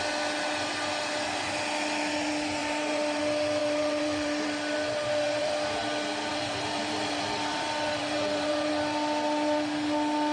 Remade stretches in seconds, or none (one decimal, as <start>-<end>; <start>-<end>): 2.6-3.2; 3.6-5.5; 6.3-8.7